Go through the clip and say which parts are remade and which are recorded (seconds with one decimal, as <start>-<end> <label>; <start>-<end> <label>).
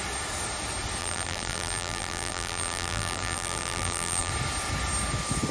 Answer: 0.0-1.0 recorded; 1.0-4.3 remade; 4.3-5.5 recorded